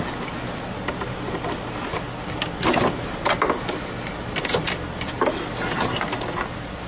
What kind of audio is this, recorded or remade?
recorded